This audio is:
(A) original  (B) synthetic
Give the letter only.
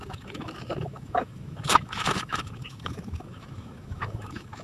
B